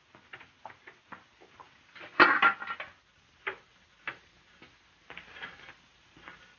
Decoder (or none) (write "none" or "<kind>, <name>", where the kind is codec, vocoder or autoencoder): none